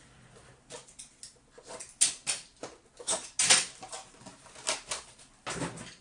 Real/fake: real